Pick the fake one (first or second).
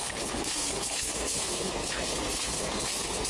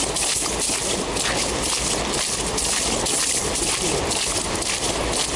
first